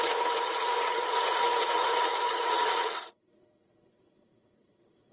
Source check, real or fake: fake